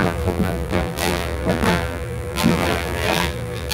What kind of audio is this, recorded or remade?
remade